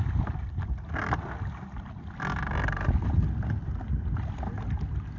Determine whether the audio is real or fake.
real